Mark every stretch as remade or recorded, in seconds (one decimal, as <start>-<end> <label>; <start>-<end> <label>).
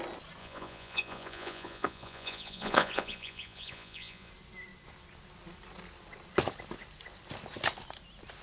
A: 0.0-0.4 recorded; 0.4-4.3 remade; 4.3-8.4 recorded